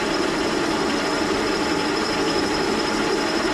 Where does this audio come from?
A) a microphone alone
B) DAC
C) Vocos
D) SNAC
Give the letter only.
A